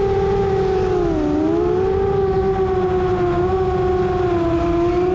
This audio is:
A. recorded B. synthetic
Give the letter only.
A